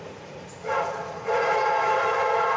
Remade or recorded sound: remade